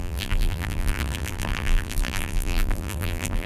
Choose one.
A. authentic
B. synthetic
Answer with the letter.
B